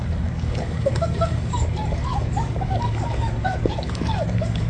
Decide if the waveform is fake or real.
fake